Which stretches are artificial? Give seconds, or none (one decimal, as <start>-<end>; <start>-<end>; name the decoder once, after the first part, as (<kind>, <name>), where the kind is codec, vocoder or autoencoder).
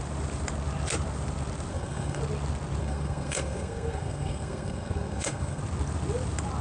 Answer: 1.7-2.2 (codec, SNAC); 2.8-5.6